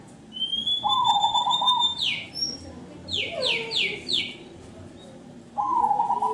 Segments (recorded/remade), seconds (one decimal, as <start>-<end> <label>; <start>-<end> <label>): 0.0-0.7 recorded; 0.7-2.3 remade; 2.3-6.3 recorded